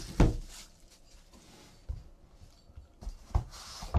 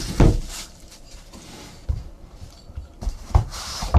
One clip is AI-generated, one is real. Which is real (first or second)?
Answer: first